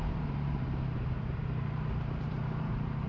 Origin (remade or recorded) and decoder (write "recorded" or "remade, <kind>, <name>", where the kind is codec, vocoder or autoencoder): remade, vocoder, BigVGAN v2